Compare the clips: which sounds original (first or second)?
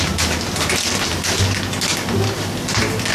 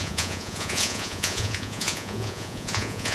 first